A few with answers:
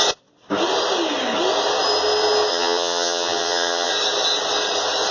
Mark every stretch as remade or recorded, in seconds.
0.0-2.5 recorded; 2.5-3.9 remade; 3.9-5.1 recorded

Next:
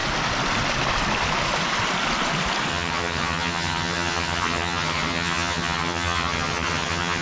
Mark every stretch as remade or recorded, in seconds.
0.0-2.7 recorded; 2.7-7.2 remade